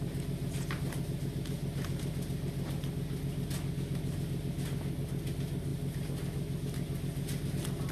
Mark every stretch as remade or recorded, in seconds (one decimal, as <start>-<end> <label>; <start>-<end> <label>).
0.0-7.9 recorded